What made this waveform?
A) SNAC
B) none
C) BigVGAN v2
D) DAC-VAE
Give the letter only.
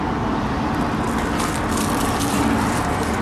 B